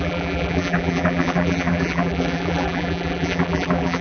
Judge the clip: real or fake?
fake